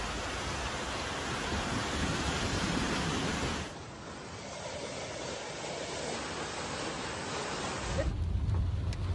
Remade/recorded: recorded